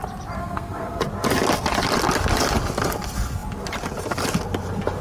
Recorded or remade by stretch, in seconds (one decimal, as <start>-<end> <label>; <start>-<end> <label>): 0.0-0.4 recorded; 0.4-1.0 remade; 1.0-5.0 recorded